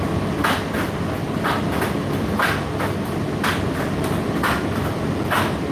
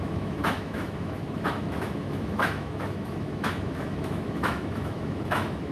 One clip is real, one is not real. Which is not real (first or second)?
second